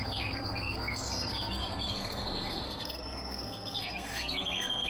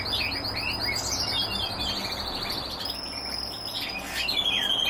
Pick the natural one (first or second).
second